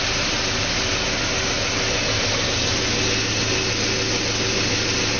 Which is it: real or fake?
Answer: real